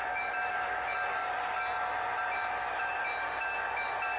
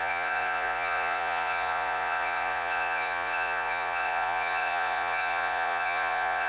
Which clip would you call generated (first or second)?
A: second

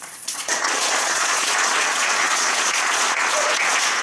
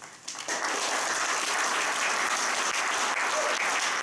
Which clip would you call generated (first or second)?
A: first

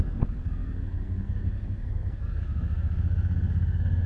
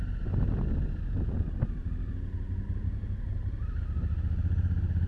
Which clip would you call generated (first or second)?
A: first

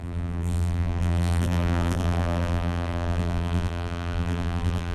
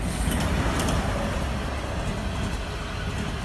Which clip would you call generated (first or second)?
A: first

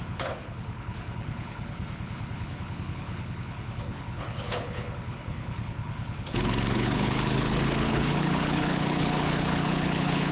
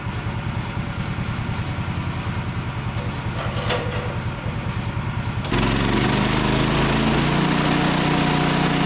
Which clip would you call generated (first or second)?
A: first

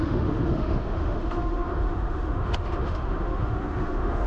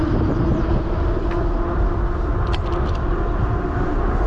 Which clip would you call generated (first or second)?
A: first